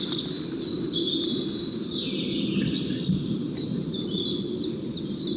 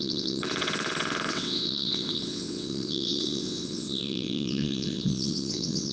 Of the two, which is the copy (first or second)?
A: second